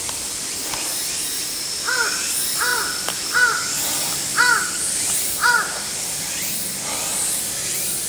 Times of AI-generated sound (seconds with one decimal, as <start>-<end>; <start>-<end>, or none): none